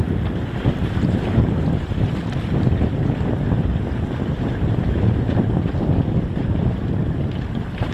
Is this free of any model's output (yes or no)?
no